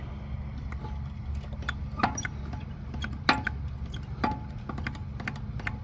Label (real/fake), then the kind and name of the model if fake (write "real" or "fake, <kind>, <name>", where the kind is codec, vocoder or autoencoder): real